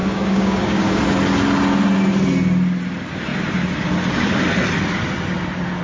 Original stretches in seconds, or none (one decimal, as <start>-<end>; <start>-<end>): 1.0-5.8